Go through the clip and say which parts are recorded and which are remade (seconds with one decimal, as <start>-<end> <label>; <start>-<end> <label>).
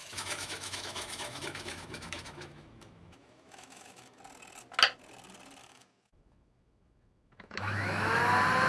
0.0-4.2 remade; 4.2-5.6 recorded; 5.6-8.2 remade; 8.2-8.7 recorded